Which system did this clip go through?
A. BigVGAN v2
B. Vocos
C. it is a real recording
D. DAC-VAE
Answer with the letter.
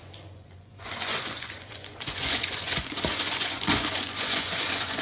B